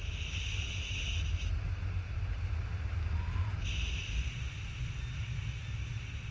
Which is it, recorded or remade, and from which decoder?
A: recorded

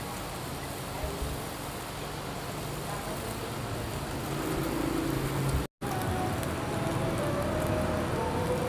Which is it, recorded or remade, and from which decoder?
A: recorded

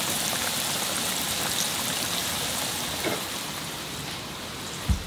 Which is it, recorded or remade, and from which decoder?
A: remade, vocoder, BigVGAN v2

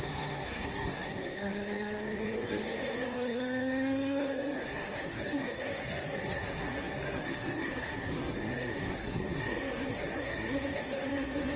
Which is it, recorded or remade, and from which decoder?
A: remade, codec, SNAC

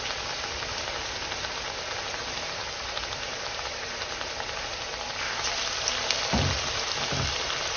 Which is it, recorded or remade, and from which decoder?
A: recorded